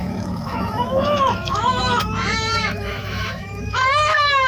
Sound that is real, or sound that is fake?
fake